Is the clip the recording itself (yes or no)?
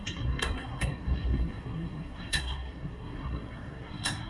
no